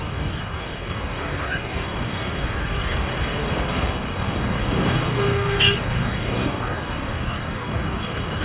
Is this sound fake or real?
fake